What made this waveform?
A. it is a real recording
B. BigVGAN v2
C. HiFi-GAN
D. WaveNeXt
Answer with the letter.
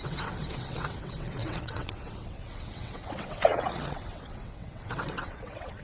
D